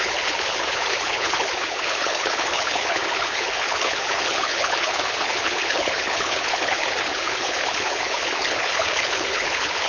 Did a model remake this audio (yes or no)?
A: yes